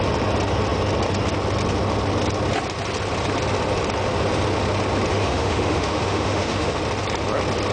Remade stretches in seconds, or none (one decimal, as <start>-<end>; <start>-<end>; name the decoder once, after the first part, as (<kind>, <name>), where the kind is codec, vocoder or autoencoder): 5.1-6.8 (autoencoder, DAC-VAE)